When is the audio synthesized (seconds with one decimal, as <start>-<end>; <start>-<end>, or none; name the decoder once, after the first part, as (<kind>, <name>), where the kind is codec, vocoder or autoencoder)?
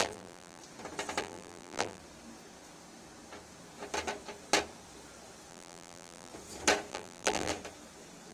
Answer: 0.0-0.6 (vocoder, BigVGAN v2); 1.2-2.0; 5.5-6.3; 6.9-7.5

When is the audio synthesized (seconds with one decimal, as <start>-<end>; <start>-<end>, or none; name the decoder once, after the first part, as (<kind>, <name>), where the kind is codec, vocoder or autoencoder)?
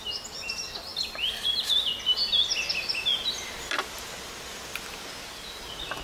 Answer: none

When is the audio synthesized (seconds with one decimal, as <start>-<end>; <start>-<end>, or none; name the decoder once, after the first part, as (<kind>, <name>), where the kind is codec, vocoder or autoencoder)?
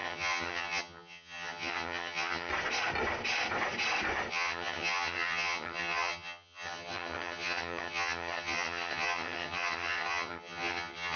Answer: 0.0-2.5 (vocoder, HiFi-GAN); 4.3-11.2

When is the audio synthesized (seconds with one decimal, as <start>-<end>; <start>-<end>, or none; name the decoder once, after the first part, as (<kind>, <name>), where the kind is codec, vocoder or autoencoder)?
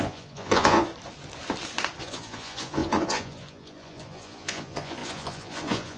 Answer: 0.0-0.9 (vocoder, Vocos); 2.0-6.0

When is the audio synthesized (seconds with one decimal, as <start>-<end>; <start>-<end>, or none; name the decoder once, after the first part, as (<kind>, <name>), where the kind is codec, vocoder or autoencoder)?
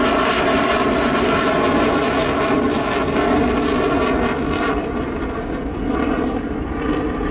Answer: none